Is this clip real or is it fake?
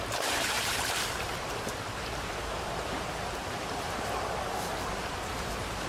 fake